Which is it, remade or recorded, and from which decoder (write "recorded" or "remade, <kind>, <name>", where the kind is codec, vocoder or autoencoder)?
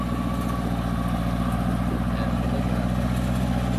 recorded